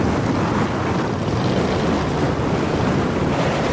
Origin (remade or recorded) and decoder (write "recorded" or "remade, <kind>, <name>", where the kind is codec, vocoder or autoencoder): recorded